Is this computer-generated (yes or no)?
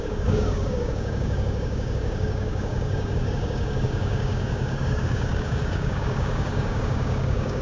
yes